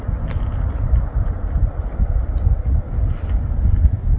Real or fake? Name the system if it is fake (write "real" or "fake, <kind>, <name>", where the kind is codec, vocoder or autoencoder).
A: real